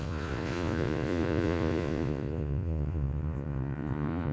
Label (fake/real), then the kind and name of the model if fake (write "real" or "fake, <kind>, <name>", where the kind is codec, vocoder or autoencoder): fake, vocoder, Vocos